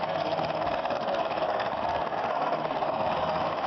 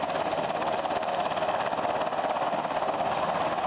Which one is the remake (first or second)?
first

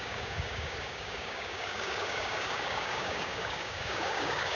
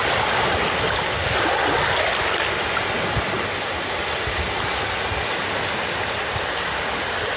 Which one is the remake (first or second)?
first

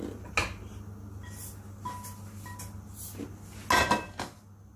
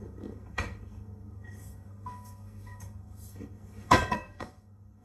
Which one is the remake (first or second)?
second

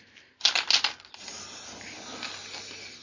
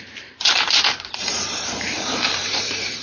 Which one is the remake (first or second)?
second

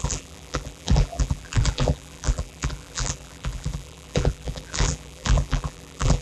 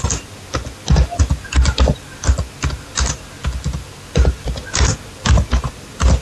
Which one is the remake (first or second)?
first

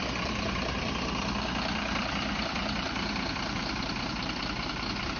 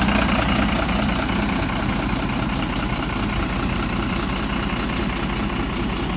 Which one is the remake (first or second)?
first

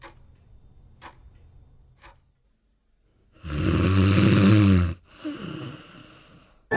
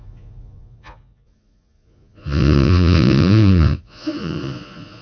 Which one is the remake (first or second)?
second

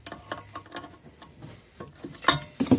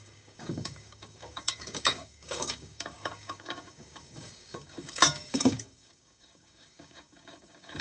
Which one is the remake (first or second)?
second